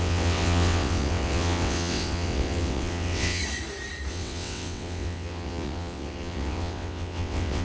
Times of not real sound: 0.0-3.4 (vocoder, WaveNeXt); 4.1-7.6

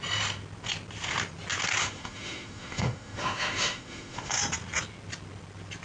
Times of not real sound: 1.8-4.4 (autoencoder, DAC-VAE)

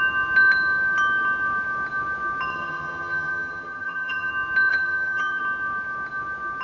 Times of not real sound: 2.5-4.3 (vocoder, HiFi-GAN); 4.7-5.4

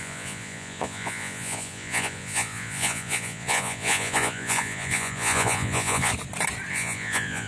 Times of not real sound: 0.0-6.1 (vocoder, Vocos); 6.7-7.5

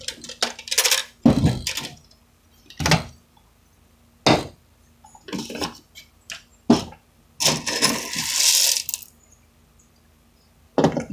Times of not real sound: none

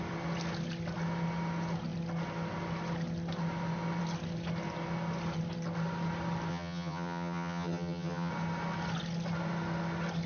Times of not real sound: 6.5-8.3 (vocoder, HiFi-GAN)

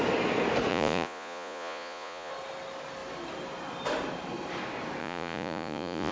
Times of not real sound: 0.7-2.3 (vocoder, Vocos); 5.0-6.1

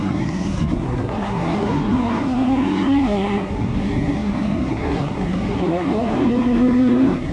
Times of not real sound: 0.0-7.3 (codec, SNAC)